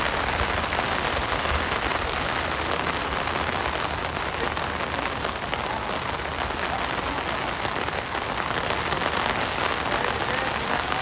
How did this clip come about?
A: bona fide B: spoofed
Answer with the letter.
A